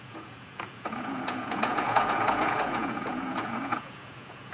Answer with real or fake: fake